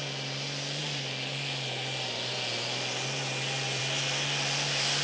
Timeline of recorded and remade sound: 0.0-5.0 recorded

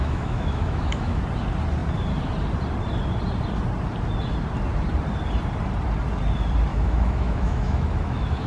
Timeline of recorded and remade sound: 0.0-1.2 remade; 1.2-6.7 recorded; 6.7-8.5 remade

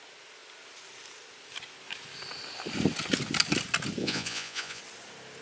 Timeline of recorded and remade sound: 0.0-4.0 recorded; 4.0-4.8 remade; 4.8-5.4 recorded

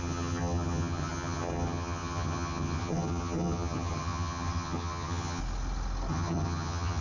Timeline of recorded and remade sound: 0.0-5.4 remade; 5.4-6.1 recorded; 6.1-7.0 remade

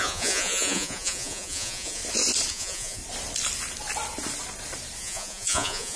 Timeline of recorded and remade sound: 0.0-2.0 remade; 2.0-2.5 recorded; 2.5-3.0 remade; 3.0-5.0 recorded; 5.0-6.0 remade

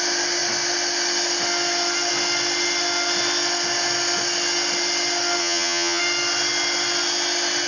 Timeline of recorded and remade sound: 0.0-5.4 recorded; 5.4-6.0 remade; 6.0-7.7 recorded

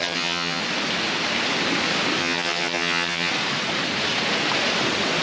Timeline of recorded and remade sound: 0.0-0.6 remade; 0.6-2.2 recorded; 2.2-3.3 remade; 3.3-5.2 recorded